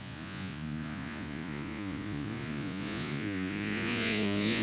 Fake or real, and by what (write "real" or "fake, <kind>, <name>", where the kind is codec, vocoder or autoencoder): fake, vocoder, Vocos